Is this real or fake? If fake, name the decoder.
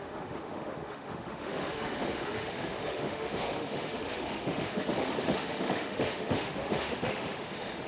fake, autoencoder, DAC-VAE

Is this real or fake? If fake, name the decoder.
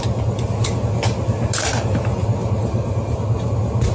real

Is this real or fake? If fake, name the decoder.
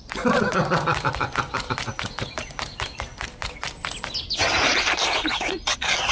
real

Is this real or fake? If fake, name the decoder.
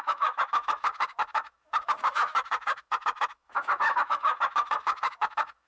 fake, autoencoder, DAC-VAE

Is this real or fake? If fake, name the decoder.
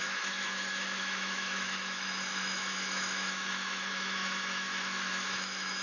fake, autoencoder, DAC-VAE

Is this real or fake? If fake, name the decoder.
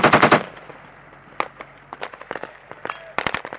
real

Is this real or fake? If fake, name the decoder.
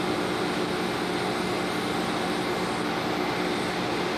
real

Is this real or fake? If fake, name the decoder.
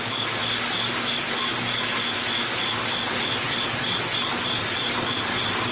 real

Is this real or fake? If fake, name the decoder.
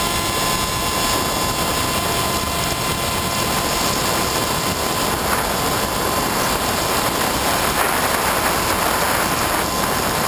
real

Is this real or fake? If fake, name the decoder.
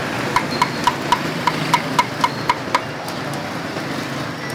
real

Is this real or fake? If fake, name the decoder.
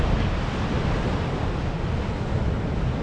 real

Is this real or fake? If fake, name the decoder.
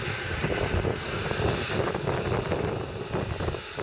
real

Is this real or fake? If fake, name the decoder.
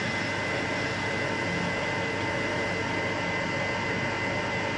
real